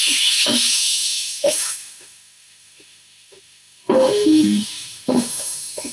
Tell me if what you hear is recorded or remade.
remade